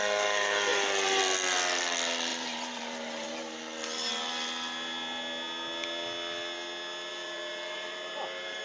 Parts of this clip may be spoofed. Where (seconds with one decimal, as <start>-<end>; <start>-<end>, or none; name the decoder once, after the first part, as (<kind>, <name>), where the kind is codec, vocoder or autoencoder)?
0.7-1.2 (vocoder, BigVGAN v2); 2.3-3.6; 7.1-8.6